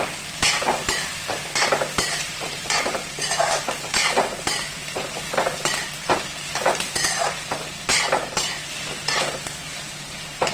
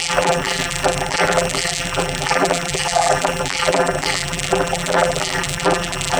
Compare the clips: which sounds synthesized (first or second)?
second